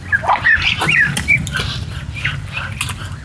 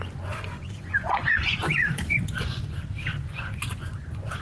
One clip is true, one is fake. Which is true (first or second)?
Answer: first